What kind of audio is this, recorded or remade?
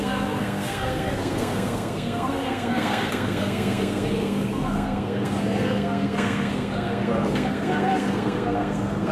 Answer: remade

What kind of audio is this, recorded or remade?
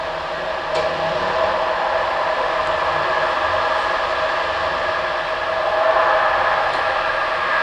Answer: recorded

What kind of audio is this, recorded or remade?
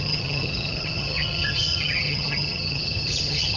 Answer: remade